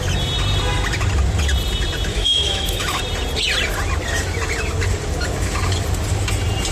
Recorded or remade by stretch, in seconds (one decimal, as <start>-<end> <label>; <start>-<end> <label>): 0.0-2.1 recorded; 2.1-3.0 remade; 3.0-6.7 recorded